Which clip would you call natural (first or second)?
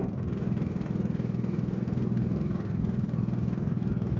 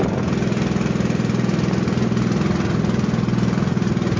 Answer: second